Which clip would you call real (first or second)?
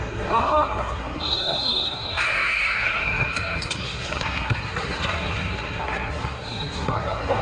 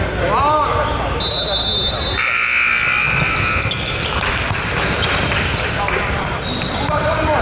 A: second